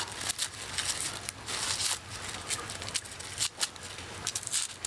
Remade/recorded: recorded